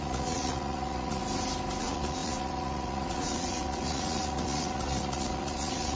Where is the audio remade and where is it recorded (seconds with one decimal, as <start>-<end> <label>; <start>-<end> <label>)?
0.0-1.2 remade; 1.2-1.8 recorded; 1.8-6.0 remade